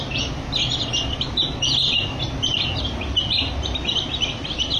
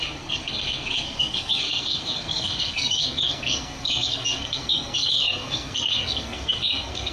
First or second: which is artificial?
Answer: second